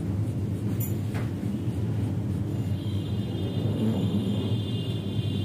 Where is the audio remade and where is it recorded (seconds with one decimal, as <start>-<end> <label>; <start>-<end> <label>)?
0.0-2.5 recorded; 2.5-3.1 remade; 3.1-3.7 recorded; 3.7-4.4 remade; 4.4-5.4 recorded